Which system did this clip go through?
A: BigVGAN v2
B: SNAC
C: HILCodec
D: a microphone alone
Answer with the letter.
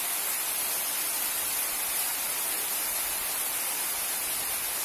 D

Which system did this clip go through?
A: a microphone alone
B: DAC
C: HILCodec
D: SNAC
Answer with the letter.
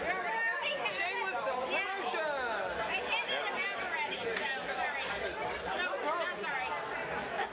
A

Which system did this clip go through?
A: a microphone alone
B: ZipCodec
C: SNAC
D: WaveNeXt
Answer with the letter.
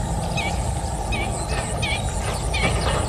A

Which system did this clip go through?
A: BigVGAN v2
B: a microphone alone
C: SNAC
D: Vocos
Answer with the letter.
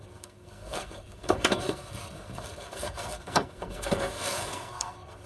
C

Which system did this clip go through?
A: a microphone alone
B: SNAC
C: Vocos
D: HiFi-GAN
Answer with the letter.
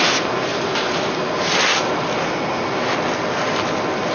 A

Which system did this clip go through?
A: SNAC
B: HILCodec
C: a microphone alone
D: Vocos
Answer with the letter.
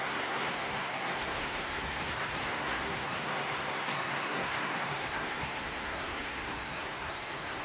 A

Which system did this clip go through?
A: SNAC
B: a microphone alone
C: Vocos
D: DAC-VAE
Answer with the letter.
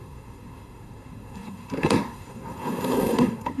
A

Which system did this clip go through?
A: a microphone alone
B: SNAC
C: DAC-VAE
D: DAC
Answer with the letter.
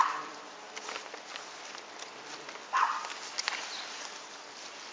A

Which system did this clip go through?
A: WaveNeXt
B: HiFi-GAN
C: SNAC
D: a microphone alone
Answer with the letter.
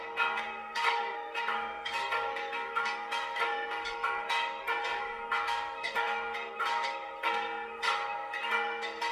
C